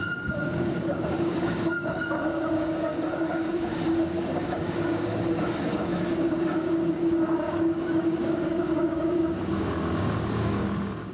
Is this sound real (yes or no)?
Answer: no